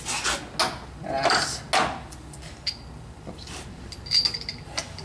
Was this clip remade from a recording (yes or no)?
no